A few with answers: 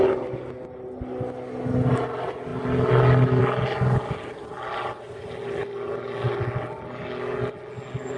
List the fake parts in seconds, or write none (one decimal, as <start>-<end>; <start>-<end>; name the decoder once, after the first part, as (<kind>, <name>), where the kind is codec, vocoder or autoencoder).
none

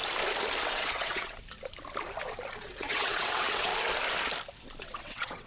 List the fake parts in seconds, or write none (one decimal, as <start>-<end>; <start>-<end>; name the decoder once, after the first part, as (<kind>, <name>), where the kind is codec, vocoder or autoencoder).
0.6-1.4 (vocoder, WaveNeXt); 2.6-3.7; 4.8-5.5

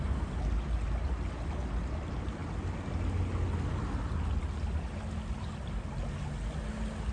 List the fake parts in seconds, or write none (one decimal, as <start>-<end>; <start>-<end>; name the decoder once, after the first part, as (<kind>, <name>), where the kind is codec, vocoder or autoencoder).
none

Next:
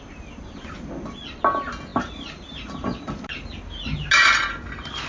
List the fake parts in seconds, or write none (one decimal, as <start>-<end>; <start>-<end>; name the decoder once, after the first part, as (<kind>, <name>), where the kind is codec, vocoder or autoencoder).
none